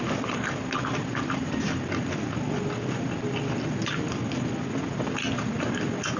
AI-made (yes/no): no